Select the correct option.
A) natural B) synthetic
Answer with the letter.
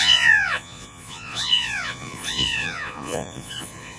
B